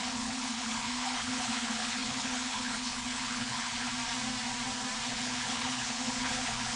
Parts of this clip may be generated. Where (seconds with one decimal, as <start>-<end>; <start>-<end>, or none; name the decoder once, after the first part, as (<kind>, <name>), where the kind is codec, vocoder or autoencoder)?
0.0-3.9 (codec, HILCodec); 5.1-6.8